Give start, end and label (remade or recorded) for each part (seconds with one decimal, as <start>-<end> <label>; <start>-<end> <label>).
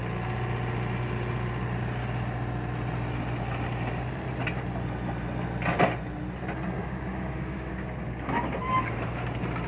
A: 0.0-6.8 recorded; 6.8-7.7 remade; 7.7-9.7 recorded